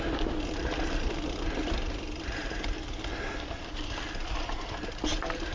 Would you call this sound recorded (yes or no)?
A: yes